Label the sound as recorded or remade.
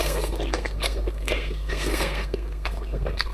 remade